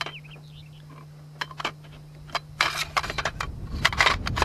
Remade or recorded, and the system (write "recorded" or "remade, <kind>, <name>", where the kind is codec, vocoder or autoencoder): recorded